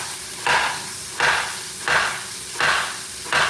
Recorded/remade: recorded